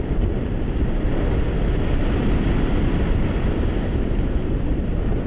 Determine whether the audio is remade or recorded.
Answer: recorded